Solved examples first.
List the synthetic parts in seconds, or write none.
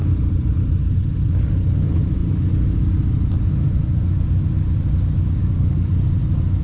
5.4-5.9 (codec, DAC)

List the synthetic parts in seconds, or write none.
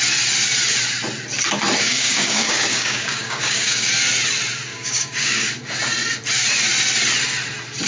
1.8-3.9 (codec, DAC); 4.7-5.5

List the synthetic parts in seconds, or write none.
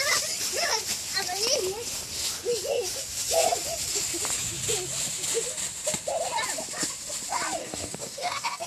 7.6-8.7 (codec, DAC)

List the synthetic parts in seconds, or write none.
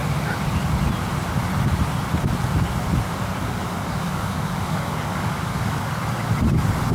3.4-5.9 (codec, DAC)